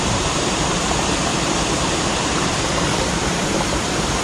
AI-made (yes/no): yes